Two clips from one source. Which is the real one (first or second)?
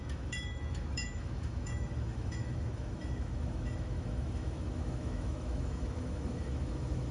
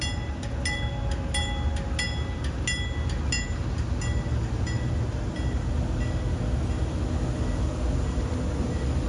second